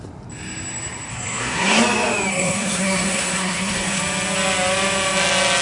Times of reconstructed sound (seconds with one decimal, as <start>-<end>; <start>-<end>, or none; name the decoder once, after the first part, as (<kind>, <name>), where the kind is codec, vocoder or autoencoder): 1.1-1.8 (codec, SNAC); 2.3-4.0